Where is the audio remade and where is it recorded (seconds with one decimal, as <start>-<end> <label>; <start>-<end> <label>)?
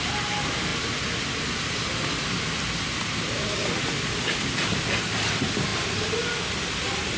0.0-7.2 recorded